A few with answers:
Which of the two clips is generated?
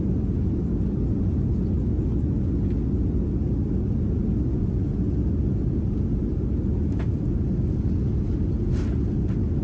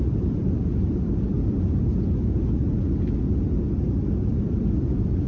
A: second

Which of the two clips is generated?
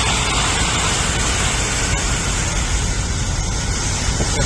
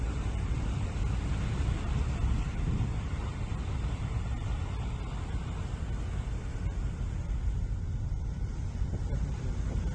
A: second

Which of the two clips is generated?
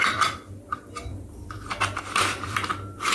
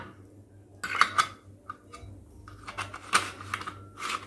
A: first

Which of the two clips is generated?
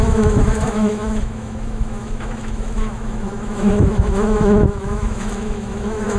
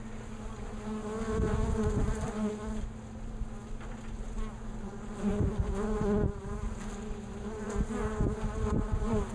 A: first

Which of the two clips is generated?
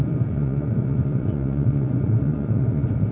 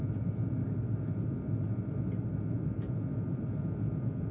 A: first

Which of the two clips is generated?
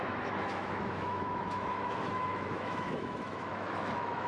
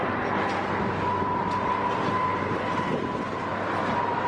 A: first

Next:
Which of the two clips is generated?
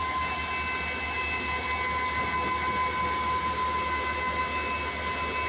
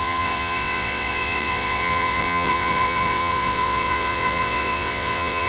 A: second